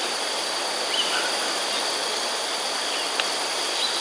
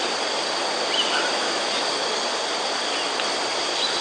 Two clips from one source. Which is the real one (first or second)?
second